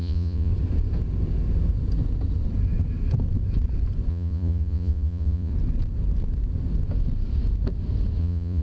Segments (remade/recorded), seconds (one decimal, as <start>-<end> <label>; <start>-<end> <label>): 0.0-0.5 remade; 0.5-4.1 recorded; 4.1-5.5 remade; 5.5-8.2 recorded; 8.2-8.6 remade